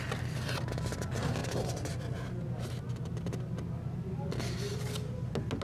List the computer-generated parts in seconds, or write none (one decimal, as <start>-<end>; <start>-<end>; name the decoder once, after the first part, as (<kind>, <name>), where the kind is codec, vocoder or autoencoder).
none